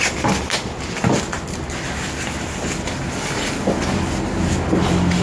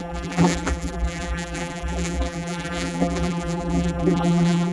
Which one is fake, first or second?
second